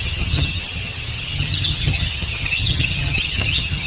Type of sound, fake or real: fake